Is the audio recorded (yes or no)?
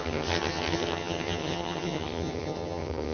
no